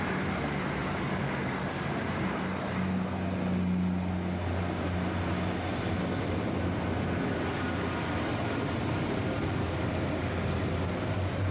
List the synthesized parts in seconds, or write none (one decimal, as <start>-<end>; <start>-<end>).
8.4-9.4